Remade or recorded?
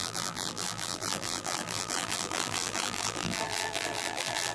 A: remade